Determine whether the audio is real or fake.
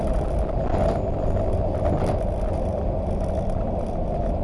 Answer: real